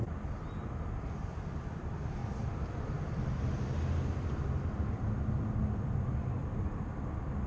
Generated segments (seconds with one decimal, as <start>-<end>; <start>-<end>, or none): none